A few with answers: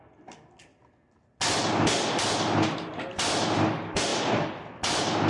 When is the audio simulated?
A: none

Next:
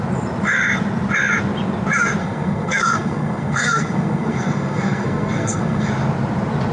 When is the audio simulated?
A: 2.2-5.9 (codec, SNAC)

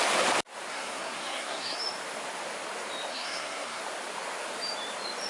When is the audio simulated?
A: 0.7-1.8 (codec, SNAC); 3.1-3.8

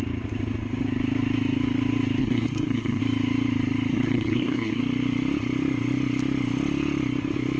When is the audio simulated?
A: 2.2-3.0 (codec, SNAC); 3.9-4.8

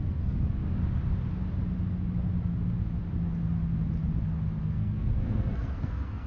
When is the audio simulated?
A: 0.0-0.8 (codec, SNAC); 4.6-6.3

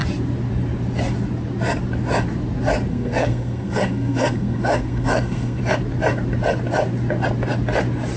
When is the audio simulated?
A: 2.9-5.6 (codec, SNAC)

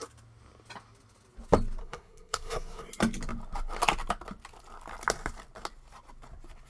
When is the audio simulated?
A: 1.8-2.9 (codec, SNAC)

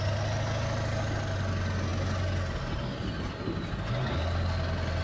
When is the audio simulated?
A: none